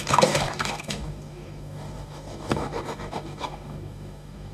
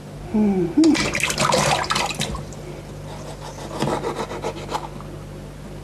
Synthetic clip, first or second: first